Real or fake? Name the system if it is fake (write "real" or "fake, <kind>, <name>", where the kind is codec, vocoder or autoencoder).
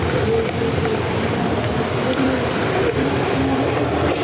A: fake, vocoder, BigVGAN v2